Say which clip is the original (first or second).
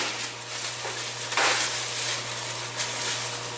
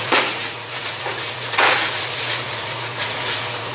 first